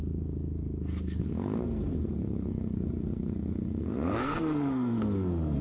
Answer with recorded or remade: remade